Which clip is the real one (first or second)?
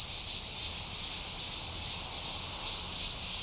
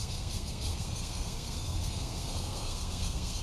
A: first